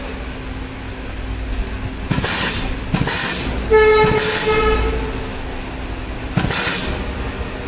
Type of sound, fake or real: real